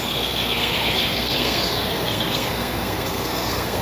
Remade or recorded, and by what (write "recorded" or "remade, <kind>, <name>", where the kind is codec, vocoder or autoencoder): remade, codec, SNAC